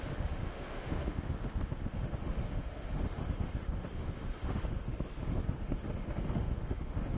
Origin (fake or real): fake